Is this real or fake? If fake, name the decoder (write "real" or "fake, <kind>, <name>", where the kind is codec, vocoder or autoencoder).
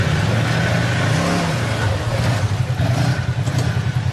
real